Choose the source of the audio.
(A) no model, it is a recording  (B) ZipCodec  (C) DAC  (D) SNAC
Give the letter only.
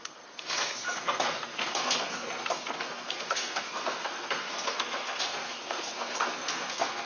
D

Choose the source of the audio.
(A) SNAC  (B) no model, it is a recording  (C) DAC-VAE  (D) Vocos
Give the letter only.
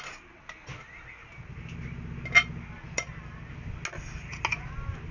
B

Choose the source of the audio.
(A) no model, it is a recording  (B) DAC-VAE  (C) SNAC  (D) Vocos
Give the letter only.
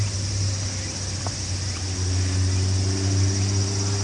A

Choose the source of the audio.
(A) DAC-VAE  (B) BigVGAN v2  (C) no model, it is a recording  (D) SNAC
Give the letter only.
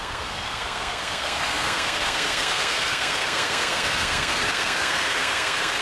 D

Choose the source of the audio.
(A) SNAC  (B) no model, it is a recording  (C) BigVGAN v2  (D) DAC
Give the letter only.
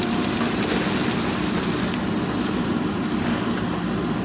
B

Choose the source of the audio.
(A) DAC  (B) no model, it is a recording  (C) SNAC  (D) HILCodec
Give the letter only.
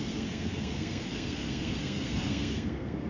C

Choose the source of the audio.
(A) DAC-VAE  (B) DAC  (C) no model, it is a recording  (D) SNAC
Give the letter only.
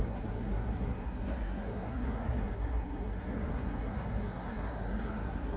D